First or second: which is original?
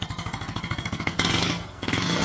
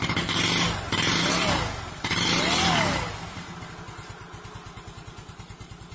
second